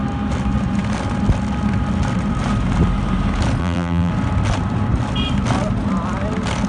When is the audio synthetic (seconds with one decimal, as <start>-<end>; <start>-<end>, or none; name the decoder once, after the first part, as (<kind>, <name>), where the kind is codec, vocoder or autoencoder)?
3.6-4.1 (vocoder, BigVGAN v2)